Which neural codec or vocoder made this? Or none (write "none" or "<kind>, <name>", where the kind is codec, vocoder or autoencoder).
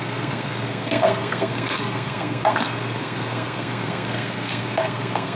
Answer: codec, SNAC